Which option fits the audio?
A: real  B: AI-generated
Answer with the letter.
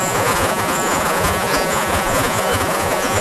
B